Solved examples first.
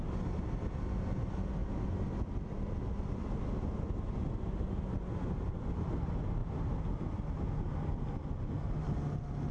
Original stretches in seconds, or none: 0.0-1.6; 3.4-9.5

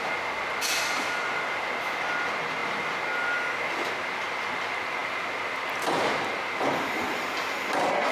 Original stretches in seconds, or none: 0.0-8.1

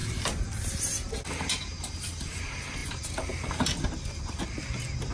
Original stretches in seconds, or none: 0.0-2.8; 4.4-5.1

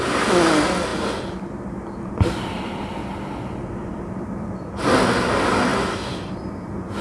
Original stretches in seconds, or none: 0.0-0.9; 4.7-7.0

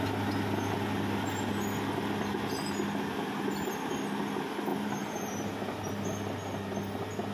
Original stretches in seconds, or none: 0.0-4.7; 5.9-7.3